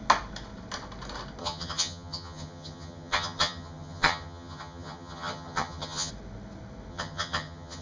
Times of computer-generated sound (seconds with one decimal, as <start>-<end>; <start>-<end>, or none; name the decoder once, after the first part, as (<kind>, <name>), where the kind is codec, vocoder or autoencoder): 1.4-6.1 (vocoder, HiFi-GAN); 6.9-7.8